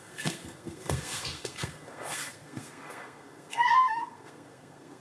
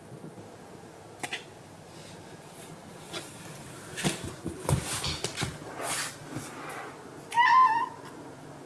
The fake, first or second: first